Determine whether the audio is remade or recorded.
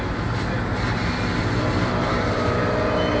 recorded